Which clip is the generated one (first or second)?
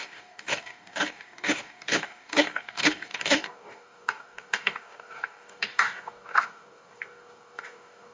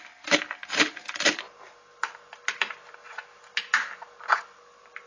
first